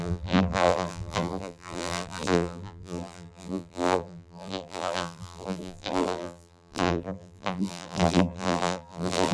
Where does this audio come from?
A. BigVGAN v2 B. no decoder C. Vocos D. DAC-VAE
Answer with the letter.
A